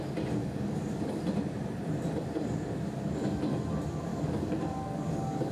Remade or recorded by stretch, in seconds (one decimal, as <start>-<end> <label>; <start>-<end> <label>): 0.0-0.4 recorded; 0.4-1.1 remade; 1.1-4.1 recorded; 4.1-5.5 remade